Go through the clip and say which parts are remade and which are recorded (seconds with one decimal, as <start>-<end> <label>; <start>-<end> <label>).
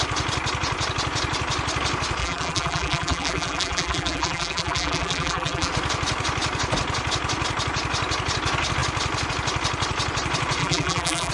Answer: 0.0-2.2 recorded; 2.2-5.7 remade; 5.7-10.6 recorded; 10.6-11.3 remade